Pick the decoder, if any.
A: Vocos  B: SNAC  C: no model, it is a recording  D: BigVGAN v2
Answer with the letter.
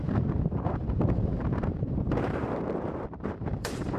D